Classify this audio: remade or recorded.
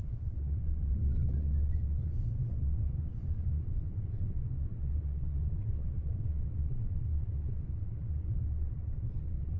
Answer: remade